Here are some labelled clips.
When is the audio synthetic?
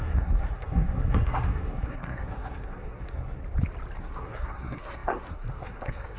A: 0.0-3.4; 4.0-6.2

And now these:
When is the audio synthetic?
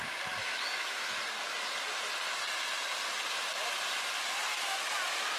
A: 0.4-1.2